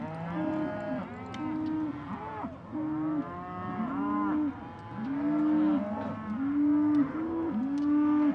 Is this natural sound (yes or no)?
yes